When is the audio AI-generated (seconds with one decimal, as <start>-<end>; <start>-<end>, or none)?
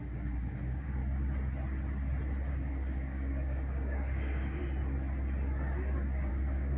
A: 0.0-1.0; 2.5-4.6; 6.3-6.8